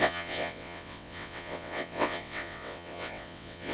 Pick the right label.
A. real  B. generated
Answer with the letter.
B